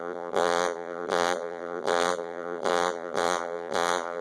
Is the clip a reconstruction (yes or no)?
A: yes